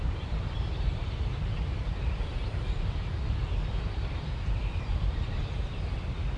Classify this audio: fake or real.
fake